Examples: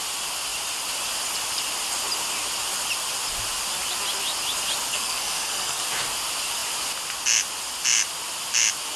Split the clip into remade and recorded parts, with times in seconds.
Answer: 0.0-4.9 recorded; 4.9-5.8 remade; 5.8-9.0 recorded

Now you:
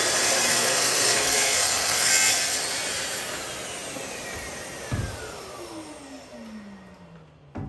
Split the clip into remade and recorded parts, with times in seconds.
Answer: 0.0-0.5 recorded; 0.5-2.1 remade; 2.1-7.7 recorded

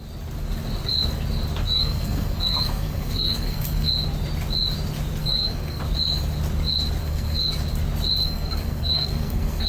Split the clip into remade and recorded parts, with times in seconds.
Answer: 0.0-1.6 recorded; 1.6-3.9 remade; 3.9-5.2 recorded; 5.2-5.8 remade; 5.8-7.0 recorded; 7.0-7.5 remade; 7.5-8.2 recorded; 8.2-9.7 remade

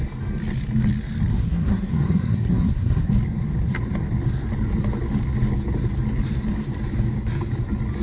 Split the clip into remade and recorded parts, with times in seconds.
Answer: 0.0-1.3 recorded; 1.3-3.1 remade; 3.1-8.0 recorded

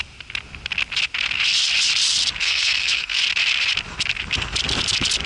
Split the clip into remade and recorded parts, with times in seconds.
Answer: 0.0-2.4 recorded; 2.4-3.2 remade; 3.2-5.3 recorded

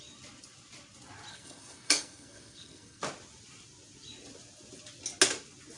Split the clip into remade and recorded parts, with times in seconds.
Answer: 0.0-1.3 recorded; 1.3-3.0 remade; 3.0-5.8 recorded

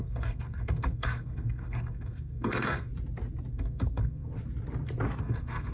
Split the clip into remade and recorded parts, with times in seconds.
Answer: 0.0-2.9 remade; 2.9-3.5 recorded; 3.5-4.3 remade; 4.3-5.2 recorded; 5.2-5.7 remade